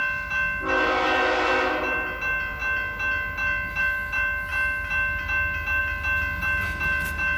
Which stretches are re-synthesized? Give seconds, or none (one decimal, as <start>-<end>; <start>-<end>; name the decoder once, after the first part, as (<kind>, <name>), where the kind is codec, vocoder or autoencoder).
none